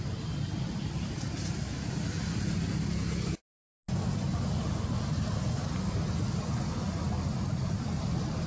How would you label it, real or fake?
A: real